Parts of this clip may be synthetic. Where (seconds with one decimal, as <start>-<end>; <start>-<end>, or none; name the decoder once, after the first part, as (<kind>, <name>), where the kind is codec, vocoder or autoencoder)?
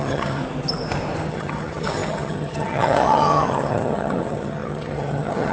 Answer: 0.0-0.4 (vocoder, HiFi-GAN); 1.3-5.5